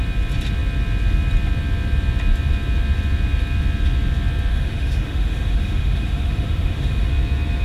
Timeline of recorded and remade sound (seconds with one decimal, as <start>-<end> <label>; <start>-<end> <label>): 0.0-4.5 recorded; 4.5-7.1 remade; 7.1-7.6 recorded